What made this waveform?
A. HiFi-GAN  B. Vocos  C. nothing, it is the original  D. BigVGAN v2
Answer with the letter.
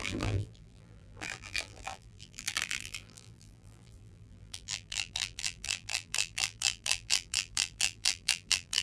D